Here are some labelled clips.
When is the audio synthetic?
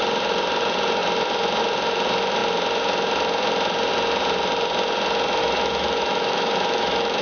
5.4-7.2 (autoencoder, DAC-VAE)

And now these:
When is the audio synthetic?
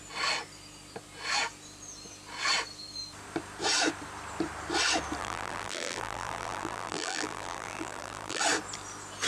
5.2-8.4 (vocoder, BigVGAN v2)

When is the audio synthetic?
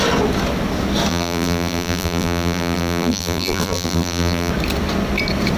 1.1-4.5 (vocoder, BigVGAN v2)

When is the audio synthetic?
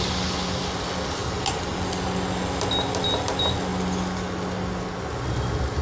none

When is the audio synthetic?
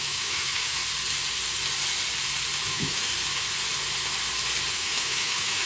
0.0-0.8 (autoencoder, DAC-VAE); 2.7-3.1; 4.7-5.7